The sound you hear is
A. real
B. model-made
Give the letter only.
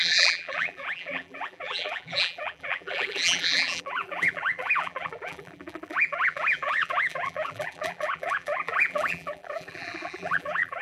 B